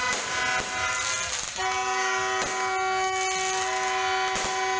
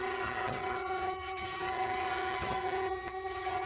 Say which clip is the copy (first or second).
second